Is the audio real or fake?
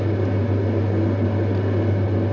real